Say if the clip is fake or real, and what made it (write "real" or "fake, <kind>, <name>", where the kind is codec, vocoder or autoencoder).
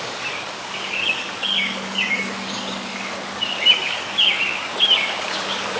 fake, codec, DAC